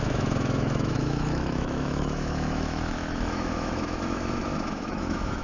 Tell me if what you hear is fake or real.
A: fake